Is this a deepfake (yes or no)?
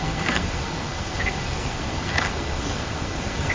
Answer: yes